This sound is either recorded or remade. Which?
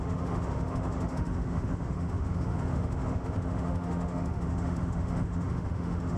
remade